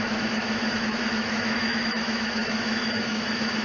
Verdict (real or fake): fake